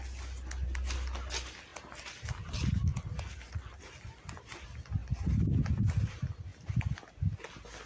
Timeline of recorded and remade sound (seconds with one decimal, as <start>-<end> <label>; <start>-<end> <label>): 0.0-7.9 recorded